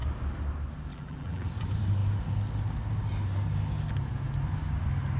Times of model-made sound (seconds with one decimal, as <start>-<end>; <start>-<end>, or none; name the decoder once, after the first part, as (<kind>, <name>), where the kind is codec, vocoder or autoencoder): 0.9-1.5 (vocoder, BigVGAN v2)